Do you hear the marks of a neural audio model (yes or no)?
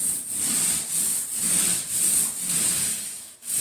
no